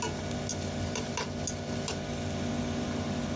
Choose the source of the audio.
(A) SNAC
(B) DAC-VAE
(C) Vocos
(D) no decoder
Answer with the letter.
D